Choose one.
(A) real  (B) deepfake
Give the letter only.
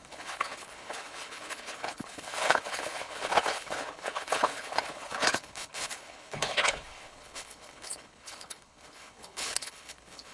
B